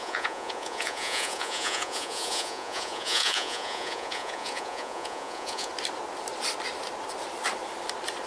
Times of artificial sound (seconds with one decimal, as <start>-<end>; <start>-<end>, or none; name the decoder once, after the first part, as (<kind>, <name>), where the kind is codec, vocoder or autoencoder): 0.0-5.7 (vocoder, Vocos)